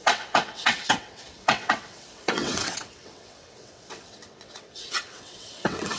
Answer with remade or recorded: remade